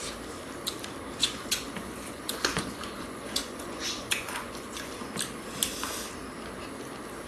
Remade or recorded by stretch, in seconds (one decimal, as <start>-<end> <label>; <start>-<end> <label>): 0.0-1.2 recorded; 1.2-5.1 remade; 5.1-7.3 recorded